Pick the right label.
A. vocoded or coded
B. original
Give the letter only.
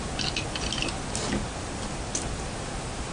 B